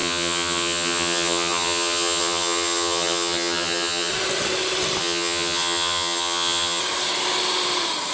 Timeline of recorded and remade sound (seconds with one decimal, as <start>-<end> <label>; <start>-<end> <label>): 0.0-4.1 remade; 4.1-5.0 recorded; 5.0-6.8 remade; 6.8-8.1 recorded